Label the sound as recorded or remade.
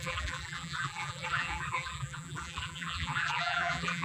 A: remade